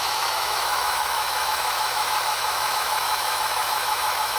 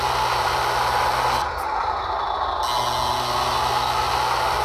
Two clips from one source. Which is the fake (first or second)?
first